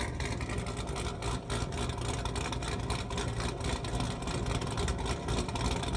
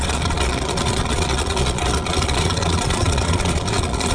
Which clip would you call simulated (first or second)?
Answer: second